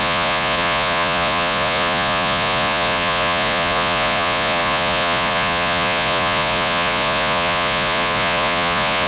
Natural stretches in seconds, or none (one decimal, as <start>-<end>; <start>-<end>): none

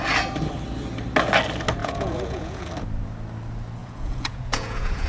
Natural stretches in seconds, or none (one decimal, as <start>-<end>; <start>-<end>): 0.0-1.8; 2.7-3.8

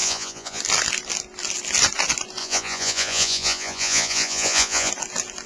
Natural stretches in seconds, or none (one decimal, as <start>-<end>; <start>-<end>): 0.6-2.4; 4.9-5.5

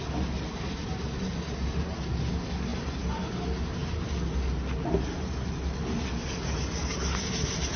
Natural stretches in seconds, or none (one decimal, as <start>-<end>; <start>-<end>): 0.0-7.8